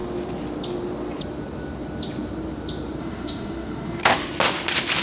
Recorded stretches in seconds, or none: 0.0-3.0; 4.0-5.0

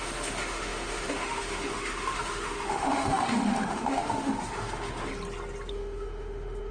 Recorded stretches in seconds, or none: 5.1-5.7

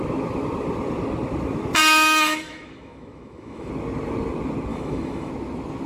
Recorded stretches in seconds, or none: 0.0-1.8; 3.7-4.7; 5.3-5.9

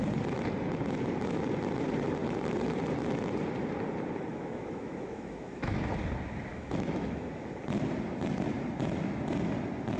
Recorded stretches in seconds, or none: 0.0-4.3; 5.9-6.5; 7.5-10.0

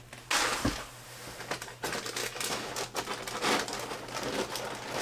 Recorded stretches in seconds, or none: 0.0-2.2; 2.7-5.0

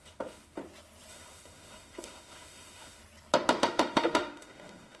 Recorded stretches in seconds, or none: 0.6-1.1; 3.0-3.6